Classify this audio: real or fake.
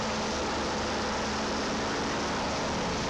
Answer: real